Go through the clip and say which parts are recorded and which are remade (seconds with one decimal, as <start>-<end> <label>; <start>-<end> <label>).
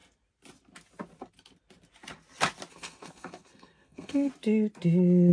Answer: 0.0-2.7 recorded; 2.7-4.3 remade; 4.3-5.3 recorded